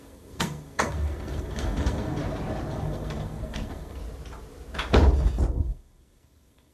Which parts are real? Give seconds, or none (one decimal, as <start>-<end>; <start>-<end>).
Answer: 2.2-2.7; 4.0-5.5